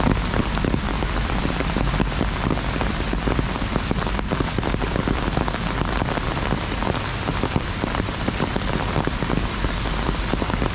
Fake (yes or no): yes